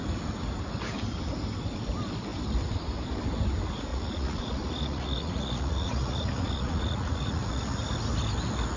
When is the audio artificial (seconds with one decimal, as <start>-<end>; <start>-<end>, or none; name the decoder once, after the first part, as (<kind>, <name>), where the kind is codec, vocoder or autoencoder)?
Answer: 3.9-7.8 (vocoder, Vocos)